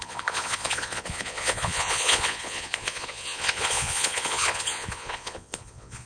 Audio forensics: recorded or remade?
remade